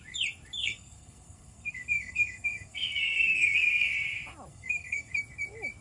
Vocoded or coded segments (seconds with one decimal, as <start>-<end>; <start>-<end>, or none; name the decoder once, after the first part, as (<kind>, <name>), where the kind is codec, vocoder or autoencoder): 0.6-3.9 (codec, SNAC); 4.5-5.1